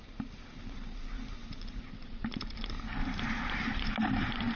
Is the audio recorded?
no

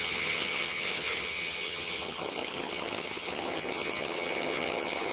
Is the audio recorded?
no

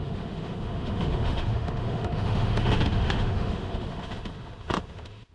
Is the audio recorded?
no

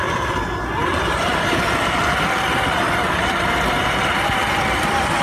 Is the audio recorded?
yes